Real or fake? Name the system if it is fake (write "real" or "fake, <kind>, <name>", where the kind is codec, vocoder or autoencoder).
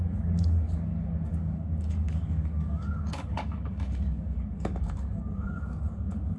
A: fake, codec, DAC